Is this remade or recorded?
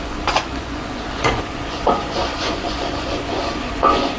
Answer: remade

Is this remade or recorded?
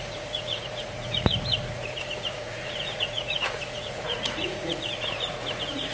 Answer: remade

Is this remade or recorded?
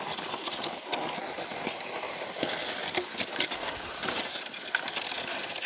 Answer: recorded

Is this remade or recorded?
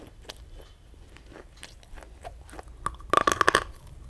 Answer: recorded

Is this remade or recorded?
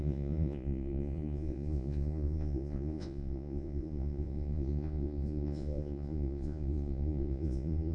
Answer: remade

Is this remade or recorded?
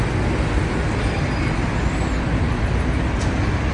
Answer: recorded